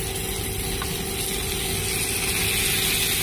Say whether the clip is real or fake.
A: real